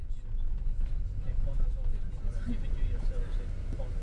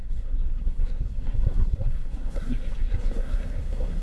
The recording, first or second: first